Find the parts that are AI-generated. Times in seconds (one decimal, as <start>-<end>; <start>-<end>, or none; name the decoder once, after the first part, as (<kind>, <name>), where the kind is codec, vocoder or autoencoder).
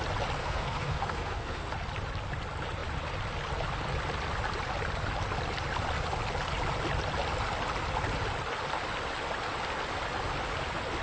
0.4-1.7 (codec, SNAC)